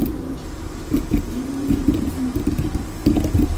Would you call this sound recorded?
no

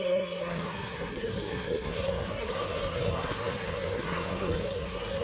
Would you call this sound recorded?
no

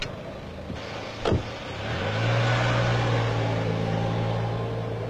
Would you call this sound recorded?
yes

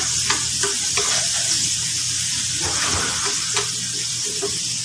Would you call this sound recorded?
yes